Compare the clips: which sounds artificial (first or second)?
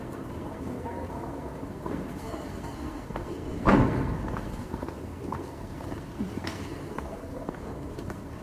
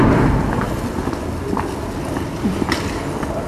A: first